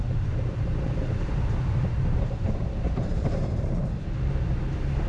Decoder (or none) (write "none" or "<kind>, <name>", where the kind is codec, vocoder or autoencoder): vocoder, BigVGAN v2